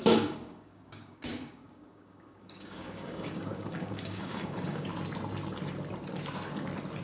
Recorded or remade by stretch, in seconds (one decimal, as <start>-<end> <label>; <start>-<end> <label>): 0.0-4.9 remade; 4.9-7.0 recorded